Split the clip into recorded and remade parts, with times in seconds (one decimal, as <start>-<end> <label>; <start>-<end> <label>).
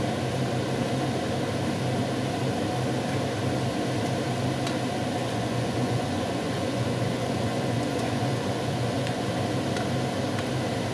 0.0-5.2 recorded; 5.2-9.3 remade; 9.3-10.9 recorded